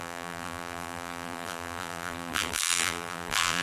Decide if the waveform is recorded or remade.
remade